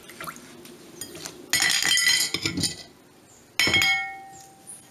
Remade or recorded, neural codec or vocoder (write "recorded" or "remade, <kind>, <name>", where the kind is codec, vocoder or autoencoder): recorded